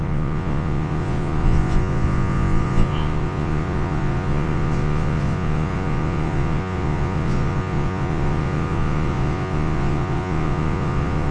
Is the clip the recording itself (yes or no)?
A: no